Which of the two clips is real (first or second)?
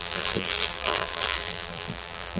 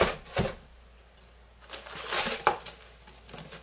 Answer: second